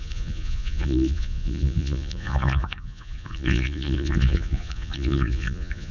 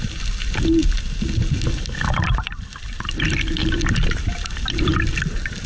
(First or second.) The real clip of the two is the second